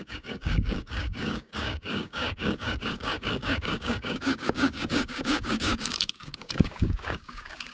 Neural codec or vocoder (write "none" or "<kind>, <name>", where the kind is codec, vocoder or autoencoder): codec, DAC